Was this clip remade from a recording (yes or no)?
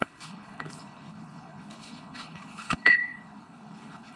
yes